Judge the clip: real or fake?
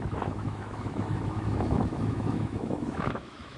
fake